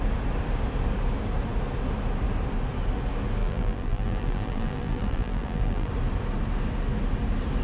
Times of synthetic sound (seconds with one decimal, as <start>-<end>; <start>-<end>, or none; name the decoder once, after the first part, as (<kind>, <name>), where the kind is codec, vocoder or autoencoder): 3.4-5.9 (vocoder, BigVGAN v2)